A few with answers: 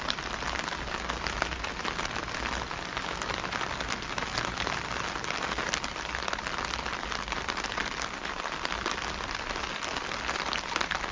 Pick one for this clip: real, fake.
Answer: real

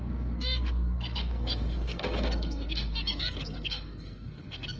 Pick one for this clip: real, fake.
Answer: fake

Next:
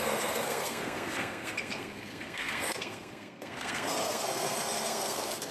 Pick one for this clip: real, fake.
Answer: fake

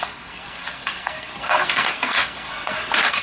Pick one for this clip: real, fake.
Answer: fake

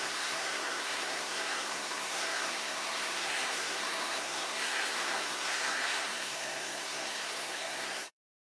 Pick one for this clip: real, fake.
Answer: fake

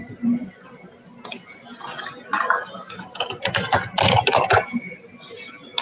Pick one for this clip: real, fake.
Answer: real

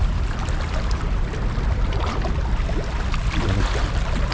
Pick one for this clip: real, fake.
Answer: real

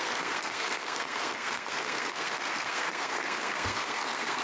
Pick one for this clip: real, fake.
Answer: fake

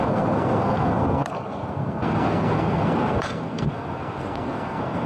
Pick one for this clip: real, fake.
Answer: fake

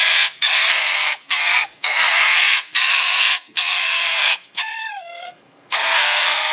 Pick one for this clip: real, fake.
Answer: fake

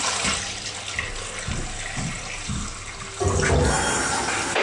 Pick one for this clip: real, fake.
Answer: real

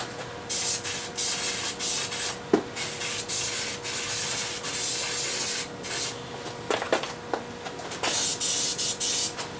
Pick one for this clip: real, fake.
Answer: real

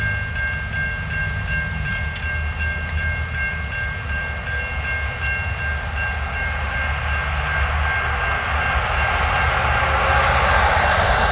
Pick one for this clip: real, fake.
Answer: real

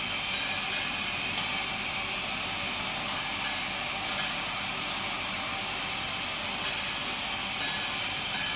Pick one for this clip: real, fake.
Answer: real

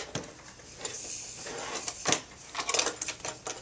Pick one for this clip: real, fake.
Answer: real